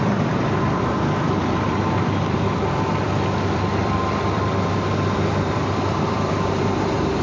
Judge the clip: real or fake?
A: fake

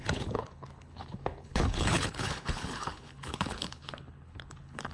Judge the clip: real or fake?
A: fake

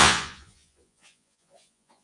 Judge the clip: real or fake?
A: fake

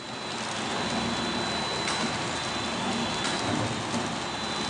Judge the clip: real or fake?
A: real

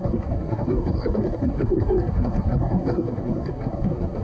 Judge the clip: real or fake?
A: fake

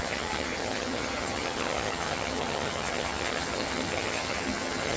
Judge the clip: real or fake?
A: fake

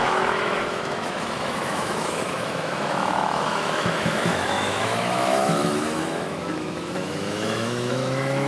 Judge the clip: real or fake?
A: fake